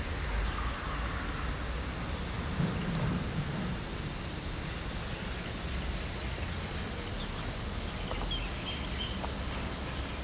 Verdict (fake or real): real